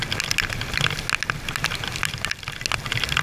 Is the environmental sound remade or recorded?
recorded